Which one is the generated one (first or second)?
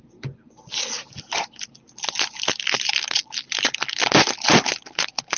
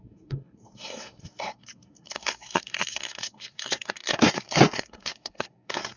second